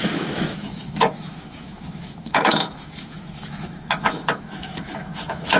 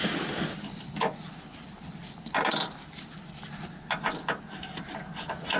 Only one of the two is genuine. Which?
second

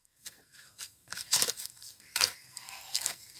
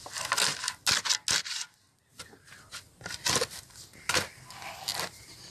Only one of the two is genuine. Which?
second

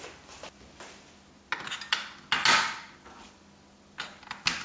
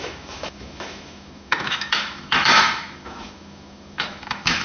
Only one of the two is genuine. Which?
first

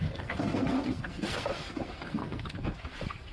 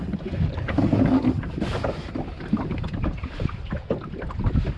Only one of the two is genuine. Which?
second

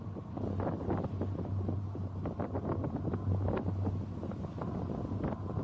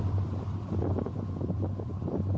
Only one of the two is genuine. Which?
first